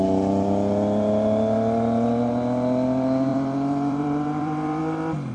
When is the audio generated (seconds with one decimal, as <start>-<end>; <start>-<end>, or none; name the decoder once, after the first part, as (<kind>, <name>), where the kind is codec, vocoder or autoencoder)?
3.3-4.8 (vocoder, BigVGAN v2)